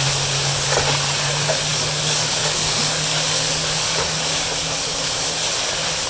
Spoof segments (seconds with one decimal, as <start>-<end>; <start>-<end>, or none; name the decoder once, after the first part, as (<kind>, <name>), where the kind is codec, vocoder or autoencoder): 1.7-5.4 (codec, DAC)